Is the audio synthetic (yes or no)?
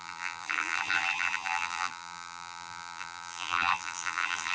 yes